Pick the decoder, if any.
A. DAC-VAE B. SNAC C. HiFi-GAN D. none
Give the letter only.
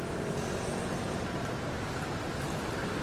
D